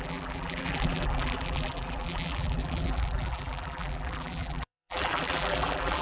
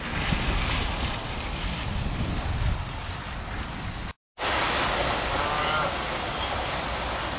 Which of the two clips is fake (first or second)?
first